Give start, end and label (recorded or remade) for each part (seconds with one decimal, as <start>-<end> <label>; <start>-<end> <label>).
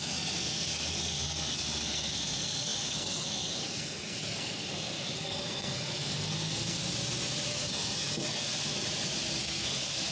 0.0-6.8 remade; 6.8-7.5 recorded; 7.5-8.5 remade; 8.5-9.4 recorded; 9.4-10.1 remade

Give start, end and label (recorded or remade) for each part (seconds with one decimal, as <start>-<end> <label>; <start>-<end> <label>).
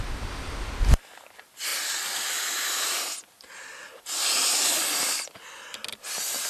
0.0-6.5 recorded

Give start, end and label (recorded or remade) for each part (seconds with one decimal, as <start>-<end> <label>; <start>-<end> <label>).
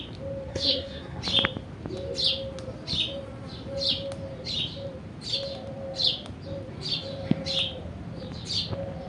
0.0-0.5 recorded; 0.5-1.2 remade; 1.2-9.1 recorded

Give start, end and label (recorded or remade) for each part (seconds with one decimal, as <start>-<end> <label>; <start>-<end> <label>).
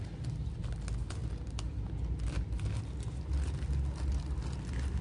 0.0-5.0 recorded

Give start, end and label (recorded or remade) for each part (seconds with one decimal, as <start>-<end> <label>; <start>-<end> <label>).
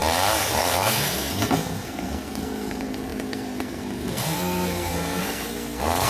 0.0-0.6 recorded; 0.6-6.1 remade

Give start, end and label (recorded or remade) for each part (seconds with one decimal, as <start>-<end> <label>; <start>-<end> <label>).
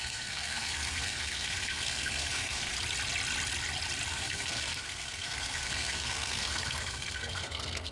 0.0-2.7 remade; 2.7-4.1 recorded; 4.1-7.9 remade